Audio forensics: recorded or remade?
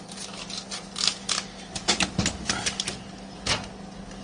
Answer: recorded